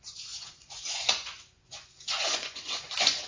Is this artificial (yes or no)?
yes